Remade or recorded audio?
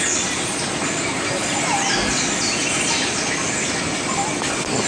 recorded